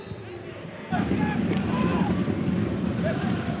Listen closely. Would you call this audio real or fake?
real